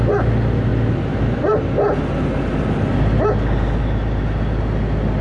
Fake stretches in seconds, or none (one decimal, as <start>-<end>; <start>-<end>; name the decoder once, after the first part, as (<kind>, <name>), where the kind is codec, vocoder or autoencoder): none